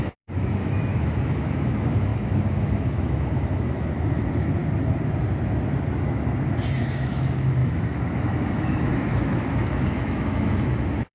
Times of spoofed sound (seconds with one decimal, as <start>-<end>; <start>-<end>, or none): 0.0-4.6; 6.8-11.1